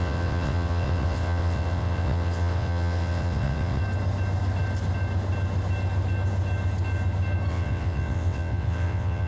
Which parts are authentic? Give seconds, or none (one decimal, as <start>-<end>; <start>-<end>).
3.8-7.5